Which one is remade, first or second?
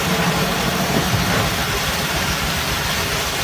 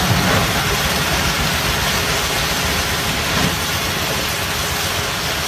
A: first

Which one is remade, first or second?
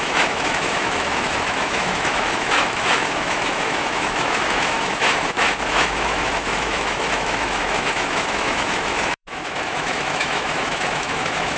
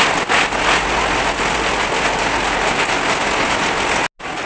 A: first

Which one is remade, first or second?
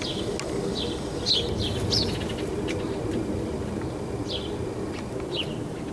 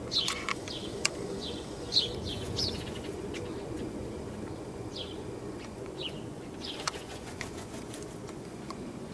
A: second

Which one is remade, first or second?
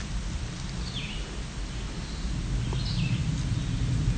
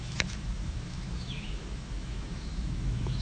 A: second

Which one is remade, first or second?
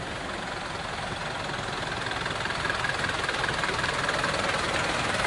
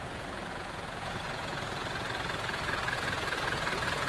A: second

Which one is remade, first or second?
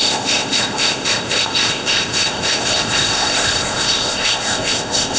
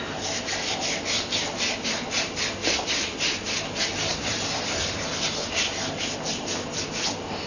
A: first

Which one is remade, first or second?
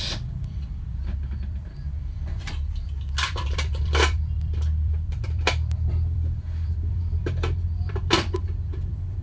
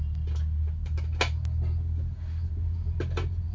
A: first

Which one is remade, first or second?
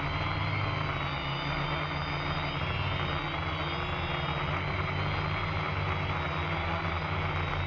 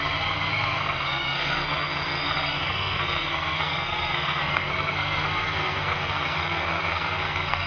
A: second